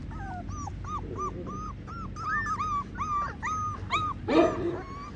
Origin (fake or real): real